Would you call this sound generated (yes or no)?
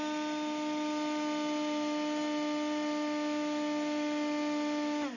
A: no